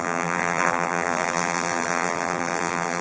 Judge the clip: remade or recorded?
remade